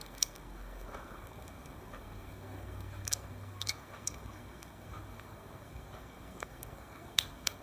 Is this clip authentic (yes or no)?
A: no